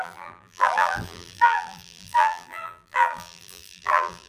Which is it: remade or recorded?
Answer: remade